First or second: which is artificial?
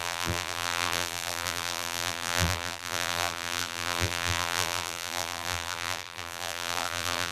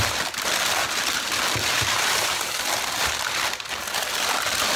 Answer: first